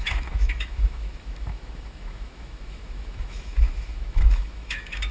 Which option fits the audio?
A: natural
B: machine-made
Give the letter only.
B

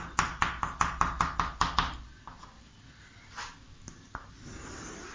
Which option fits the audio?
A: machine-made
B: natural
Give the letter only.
B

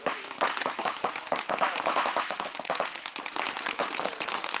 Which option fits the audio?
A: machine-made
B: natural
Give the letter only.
A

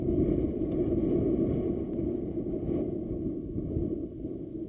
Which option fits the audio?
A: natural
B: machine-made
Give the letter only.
A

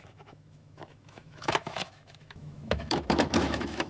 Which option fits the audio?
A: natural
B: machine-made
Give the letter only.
B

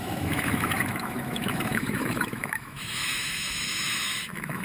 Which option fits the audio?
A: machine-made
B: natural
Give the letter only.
A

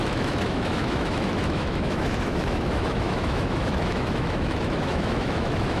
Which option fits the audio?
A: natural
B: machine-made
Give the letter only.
B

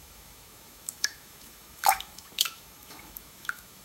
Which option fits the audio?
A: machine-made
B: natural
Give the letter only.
A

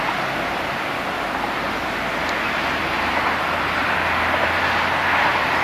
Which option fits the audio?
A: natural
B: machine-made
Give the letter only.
A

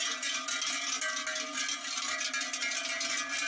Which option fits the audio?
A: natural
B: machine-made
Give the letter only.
A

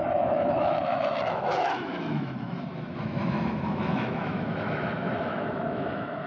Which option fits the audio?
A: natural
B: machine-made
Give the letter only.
B